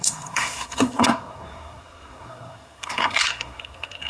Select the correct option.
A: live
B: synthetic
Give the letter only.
B